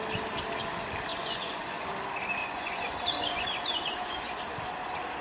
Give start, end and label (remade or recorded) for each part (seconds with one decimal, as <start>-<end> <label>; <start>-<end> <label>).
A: 0.0-1.1 recorded; 1.1-1.9 remade; 1.9-2.4 recorded; 2.4-4.4 remade; 4.4-5.2 recorded